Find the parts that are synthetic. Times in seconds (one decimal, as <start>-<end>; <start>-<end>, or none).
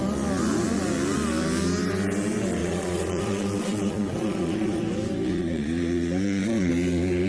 2.6-4.8; 5.3-6.7